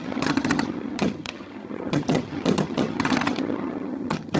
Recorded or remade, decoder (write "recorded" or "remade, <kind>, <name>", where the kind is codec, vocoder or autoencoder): remade, vocoder, HiFi-GAN